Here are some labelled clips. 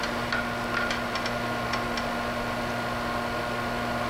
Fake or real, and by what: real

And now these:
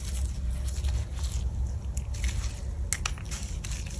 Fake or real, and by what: real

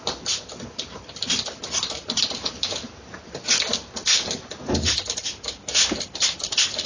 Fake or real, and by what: real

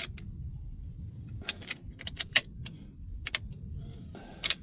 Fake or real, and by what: fake, vocoder, BigVGAN v2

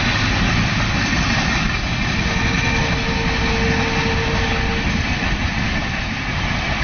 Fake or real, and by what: real